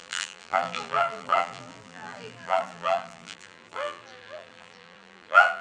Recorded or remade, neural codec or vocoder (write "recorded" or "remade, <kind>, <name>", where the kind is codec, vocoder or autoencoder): remade, vocoder, BigVGAN v2